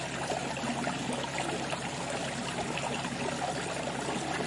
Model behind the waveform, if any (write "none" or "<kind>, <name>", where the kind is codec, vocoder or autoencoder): none